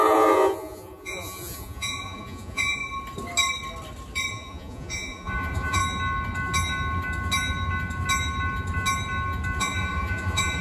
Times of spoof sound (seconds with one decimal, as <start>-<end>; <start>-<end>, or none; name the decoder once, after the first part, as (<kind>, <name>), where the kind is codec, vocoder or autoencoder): 0.0-2.8 (vocoder, Vocos); 4.3-5.8; 9.6-10.6